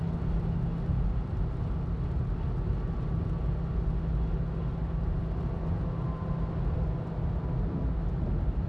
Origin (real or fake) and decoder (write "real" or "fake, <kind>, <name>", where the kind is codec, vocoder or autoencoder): real